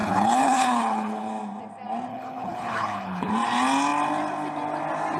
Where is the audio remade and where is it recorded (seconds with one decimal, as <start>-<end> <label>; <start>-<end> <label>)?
0.0-1.3 remade; 1.3-2.1 recorded; 2.1-3.3 remade; 3.3-5.2 recorded